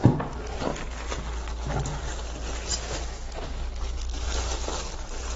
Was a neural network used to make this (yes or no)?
no